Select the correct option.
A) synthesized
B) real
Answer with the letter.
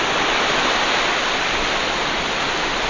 B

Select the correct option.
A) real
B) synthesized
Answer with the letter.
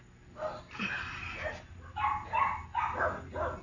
A